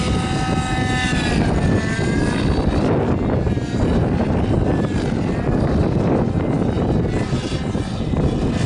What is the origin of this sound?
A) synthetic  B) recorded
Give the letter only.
B